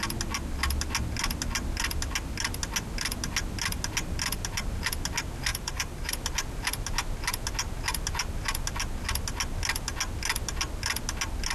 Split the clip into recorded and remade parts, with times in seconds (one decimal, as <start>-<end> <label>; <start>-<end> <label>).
0.0-5.5 recorded; 5.5-6.1 remade; 6.1-11.5 recorded